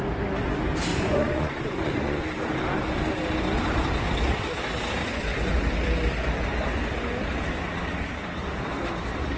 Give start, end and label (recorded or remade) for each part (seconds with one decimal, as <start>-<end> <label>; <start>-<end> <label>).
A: 0.0-0.9 recorded; 0.9-2.2 remade; 2.2-5.0 recorded; 5.0-5.6 remade; 5.6-9.4 recorded